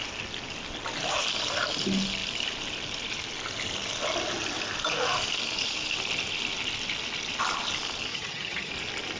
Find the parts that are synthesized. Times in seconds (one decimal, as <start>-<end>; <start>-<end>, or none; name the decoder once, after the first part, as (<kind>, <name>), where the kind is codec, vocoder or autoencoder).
8.1-8.7 (vocoder, HiFi-GAN)